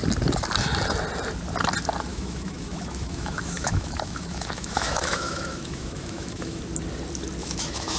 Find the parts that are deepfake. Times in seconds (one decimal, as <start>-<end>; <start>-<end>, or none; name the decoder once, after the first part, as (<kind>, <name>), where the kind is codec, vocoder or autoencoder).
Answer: 2.1-6.6 (autoencoder, DAC-VAE); 7.4-8.0